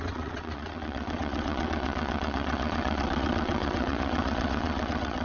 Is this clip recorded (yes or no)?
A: no